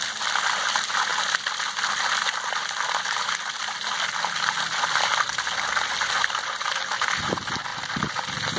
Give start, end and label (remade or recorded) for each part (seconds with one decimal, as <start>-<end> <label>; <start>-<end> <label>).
0.0-8.6 recorded